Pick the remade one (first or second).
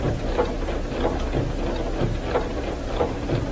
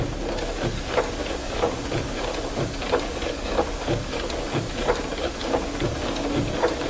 second